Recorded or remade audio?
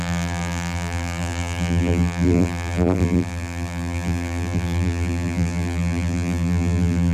remade